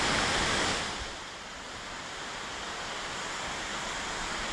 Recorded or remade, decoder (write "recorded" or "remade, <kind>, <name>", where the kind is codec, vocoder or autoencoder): remade, vocoder, BigVGAN v2